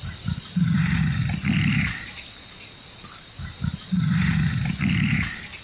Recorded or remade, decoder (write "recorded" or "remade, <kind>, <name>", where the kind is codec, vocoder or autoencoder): remade, vocoder, BigVGAN v2